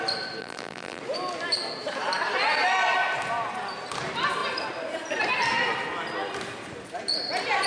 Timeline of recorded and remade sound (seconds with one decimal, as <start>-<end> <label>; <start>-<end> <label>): 0.0-0.4 recorded; 0.4-1.0 remade; 1.0-7.7 recorded